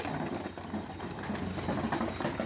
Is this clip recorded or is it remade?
recorded